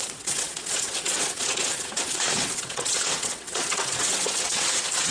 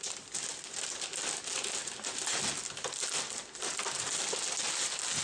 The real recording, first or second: second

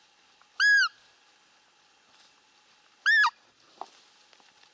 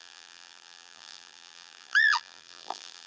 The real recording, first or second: first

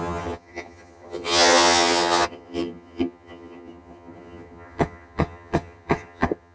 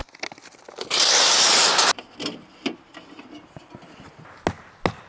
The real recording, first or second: second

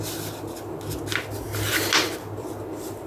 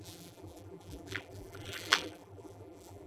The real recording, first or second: first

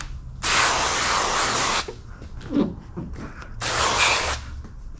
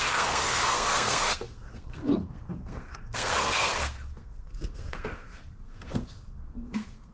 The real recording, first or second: first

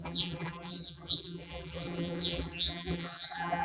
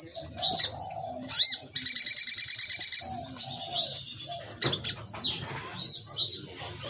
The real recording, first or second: second